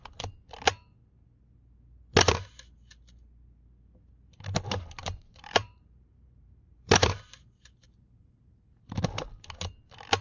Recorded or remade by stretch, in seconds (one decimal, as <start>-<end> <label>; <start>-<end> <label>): 0.0-5.0 recorded; 5.0-9.0 remade; 9.0-10.2 recorded